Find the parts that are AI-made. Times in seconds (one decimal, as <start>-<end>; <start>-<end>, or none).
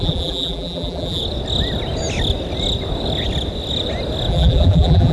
0.0-1.2; 4.3-5.1